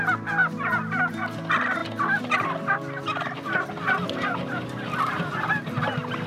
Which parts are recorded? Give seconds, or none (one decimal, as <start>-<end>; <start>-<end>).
0.0-6.3